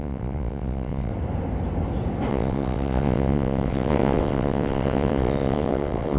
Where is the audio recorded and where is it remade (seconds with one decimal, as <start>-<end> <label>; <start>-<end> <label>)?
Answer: 0.0-1.1 remade; 1.1-2.3 recorded; 2.3-6.2 remade